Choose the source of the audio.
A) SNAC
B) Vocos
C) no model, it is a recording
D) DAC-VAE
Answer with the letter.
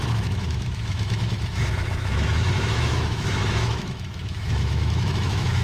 D